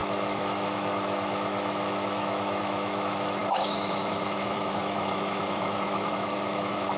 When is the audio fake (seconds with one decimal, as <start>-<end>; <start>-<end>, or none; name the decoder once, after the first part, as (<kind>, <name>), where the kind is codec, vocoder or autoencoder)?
0.0-7.0 (autoencoder, DAC-VAE)